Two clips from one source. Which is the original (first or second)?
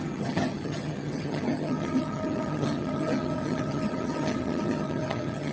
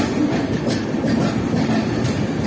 second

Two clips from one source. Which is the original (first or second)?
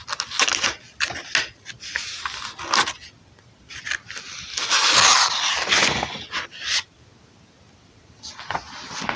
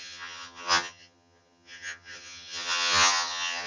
first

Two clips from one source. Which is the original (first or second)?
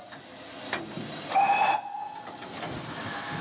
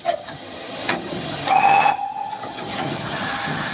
first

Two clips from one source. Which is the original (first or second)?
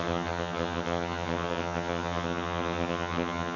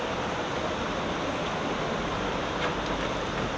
second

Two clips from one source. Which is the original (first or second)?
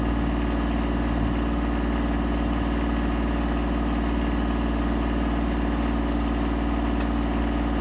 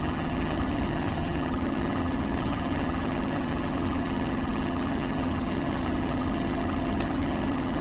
first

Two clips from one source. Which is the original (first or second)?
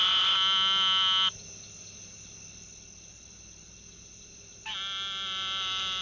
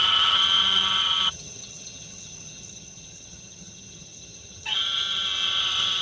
first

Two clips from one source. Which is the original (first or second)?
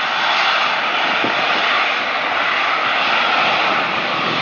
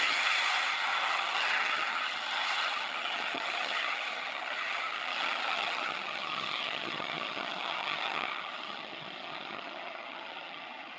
first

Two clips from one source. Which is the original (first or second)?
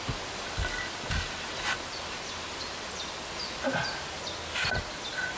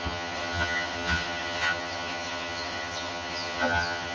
first